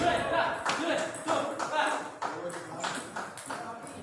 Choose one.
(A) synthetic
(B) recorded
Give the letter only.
B